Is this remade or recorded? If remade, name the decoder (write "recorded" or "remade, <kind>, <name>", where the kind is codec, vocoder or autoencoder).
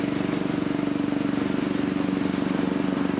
recorded